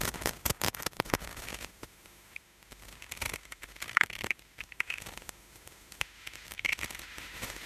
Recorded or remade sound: remade